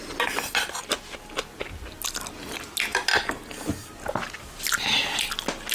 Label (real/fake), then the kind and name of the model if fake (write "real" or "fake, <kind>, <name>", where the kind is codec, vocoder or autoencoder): real